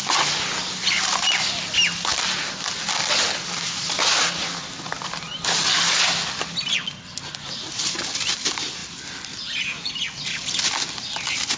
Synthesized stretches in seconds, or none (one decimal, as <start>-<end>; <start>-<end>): none